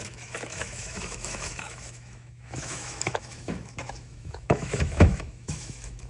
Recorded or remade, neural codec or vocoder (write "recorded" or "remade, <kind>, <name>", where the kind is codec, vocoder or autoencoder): remade, autoencoder, DAC-VAE